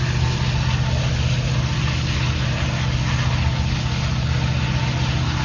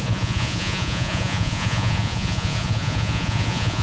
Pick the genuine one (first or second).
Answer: first